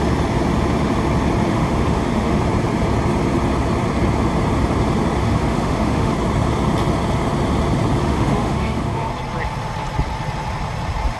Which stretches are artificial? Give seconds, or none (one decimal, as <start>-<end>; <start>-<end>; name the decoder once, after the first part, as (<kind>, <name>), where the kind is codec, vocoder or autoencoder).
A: 1.5-2.4 (autoencoder, DAC-VAE); 5.2-6.1; 8.0-9.1